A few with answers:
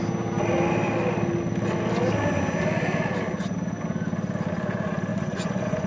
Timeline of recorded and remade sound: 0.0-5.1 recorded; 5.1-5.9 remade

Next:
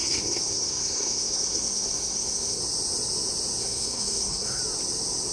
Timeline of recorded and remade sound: 0.0-2.6 remade; 2.6-3.6 recorded; 3.6-4.6 remade; 4.6-5.3 recorded

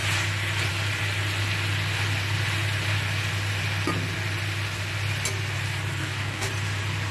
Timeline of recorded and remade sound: 0.0-6.0 recorded; 6.0-6.5 remade; 6.5-7.1 recorded

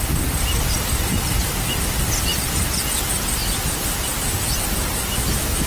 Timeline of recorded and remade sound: 0.0-5.7 recorded

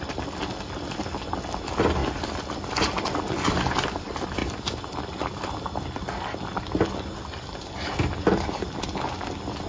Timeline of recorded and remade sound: 0.0-9.7 recorded

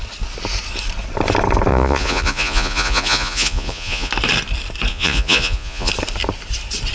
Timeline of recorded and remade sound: 0.0-1.7 recorded; 1.7-4.1 remade; 4.1-4.9 recorded; 4.9-5.9 remade; 5.9-6.9 recorded

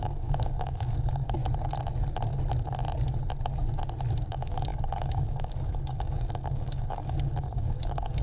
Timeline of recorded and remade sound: 0.0-1.4 remade; 1.4-4.2 recorded; 4.2-8.2 remade